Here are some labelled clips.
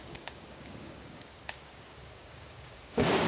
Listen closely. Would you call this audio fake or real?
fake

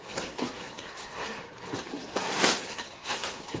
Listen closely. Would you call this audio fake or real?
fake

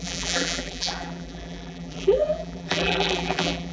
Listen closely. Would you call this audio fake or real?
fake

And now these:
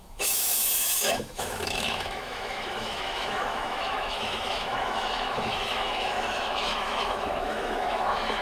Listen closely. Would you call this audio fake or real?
fake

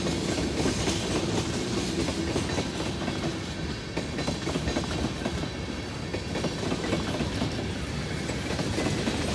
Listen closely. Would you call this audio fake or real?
real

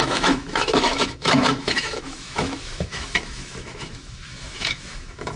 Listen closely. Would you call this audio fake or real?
fake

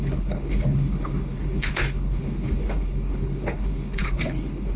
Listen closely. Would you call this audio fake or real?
fake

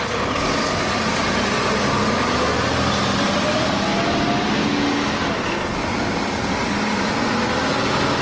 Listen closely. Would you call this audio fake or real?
real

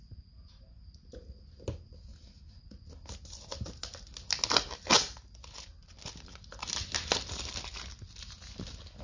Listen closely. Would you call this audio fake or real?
real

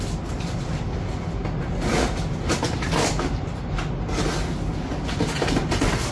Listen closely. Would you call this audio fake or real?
real